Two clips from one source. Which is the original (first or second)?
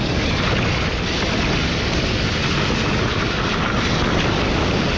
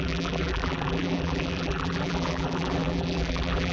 first